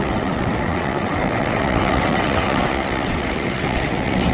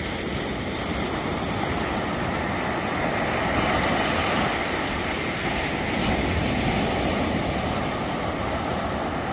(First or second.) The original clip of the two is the second